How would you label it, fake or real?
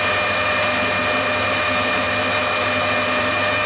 real